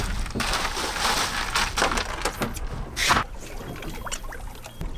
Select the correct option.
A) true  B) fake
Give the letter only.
A